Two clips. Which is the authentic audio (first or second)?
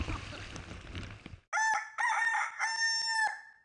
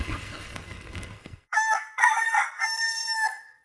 first